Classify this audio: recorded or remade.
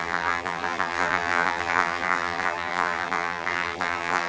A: remade